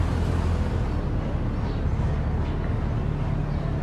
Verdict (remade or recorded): recorded